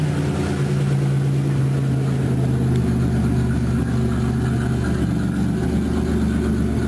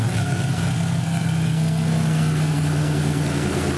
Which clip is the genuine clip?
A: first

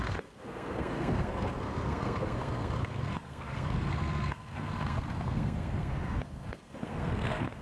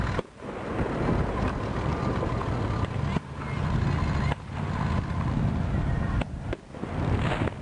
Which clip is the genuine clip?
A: second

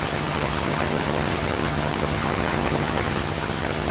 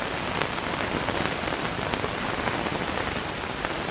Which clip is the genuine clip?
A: second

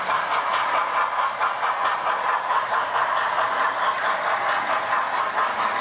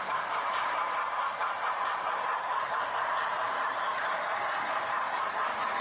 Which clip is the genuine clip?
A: first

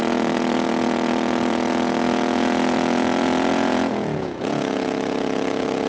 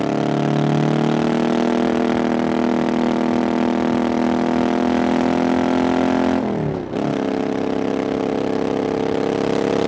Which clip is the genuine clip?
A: second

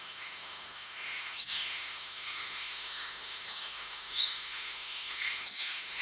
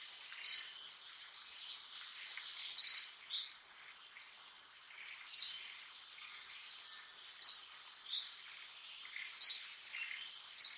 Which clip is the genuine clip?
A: second